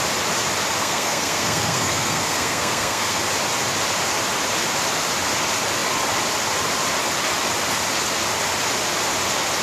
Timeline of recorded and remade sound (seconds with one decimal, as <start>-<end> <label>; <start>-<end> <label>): 0.0-0.8 recorded; 0.8-3.2 remade; 3.2-9.6 recorded

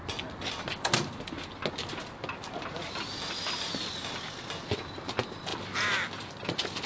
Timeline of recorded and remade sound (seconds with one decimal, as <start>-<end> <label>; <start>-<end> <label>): 0.0-6.9 recorded

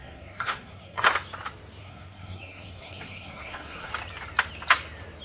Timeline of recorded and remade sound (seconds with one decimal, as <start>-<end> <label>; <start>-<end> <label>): 0.0-1.1 remade; 1.1-1.8 recorded; 1.8-3.9 remade; 3.9-5.2 recorded

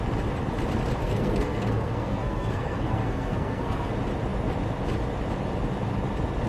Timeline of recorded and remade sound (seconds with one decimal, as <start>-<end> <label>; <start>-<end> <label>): 0.0-1.0 recorded; 1.0-3.9 remade; 3.9-6.5 recorded

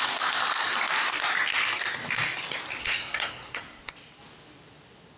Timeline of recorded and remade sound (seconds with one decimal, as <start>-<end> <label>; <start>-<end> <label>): 0.0-2.8 recorded; 2.8-3.9 remade; 3.9-5.2 recorded

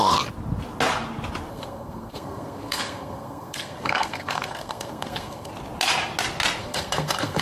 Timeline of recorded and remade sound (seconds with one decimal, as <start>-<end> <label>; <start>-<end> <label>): 0.0-1.5 recorded; 1.5-5.5 remade; 5.5-6.6 recorded; 6.6-7.4 remade

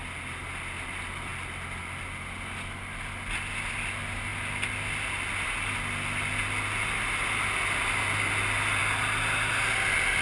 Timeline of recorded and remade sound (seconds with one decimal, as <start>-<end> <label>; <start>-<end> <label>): 0.0-10.2 recorded

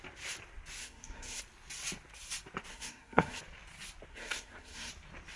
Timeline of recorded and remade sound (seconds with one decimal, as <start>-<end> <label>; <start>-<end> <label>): 0.0-0.8 recorded; 0.8-1.4 remade; 1.4-2.7 recorded; 2.7-3.4 remade; 3.4-4.1 recorded; 4.1-4.9 remade; 4.9-5.4 recorded